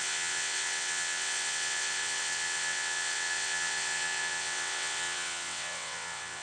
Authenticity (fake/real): fake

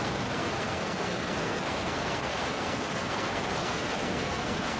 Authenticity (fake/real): fake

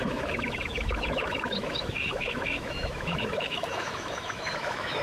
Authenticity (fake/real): fake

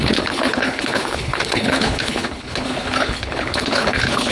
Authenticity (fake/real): fake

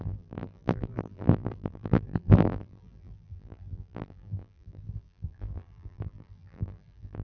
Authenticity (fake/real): fake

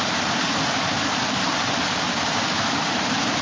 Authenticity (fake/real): real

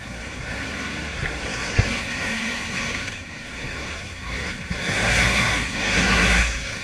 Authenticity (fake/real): fake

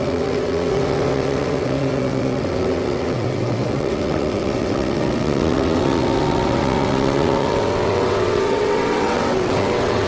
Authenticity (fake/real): fake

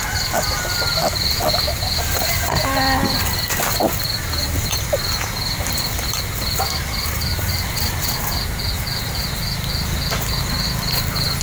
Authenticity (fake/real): real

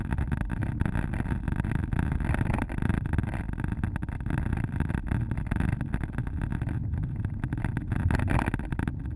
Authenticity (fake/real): real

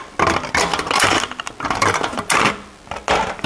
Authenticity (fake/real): real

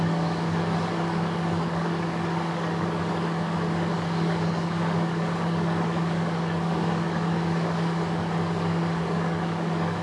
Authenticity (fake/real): fake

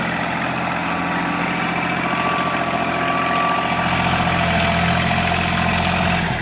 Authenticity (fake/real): real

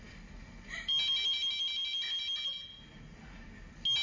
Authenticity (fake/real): real